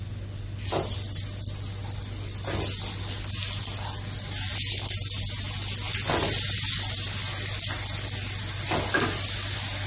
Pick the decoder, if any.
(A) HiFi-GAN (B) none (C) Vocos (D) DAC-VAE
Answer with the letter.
B